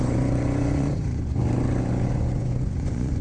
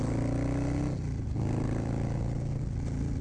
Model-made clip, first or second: first